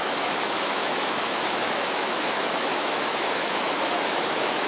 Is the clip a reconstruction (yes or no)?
yes